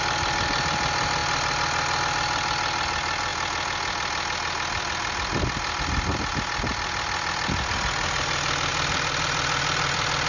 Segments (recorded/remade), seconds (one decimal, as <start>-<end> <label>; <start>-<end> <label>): 0.0-8.7 recorded; 8.7-10.3 remade